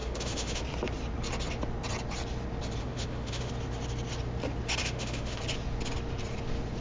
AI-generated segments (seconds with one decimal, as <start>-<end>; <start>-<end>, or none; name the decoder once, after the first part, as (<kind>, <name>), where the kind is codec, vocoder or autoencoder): 0.0-0.6 (autoencoder, DAC-VAE); 2.8-3.5; 4.8-5.4

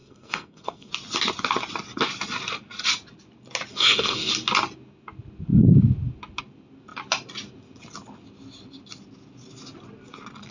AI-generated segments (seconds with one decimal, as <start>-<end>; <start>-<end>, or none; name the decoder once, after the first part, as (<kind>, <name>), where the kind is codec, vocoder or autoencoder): 0.0-0.9 (codec, SNAC); 3.7-4.3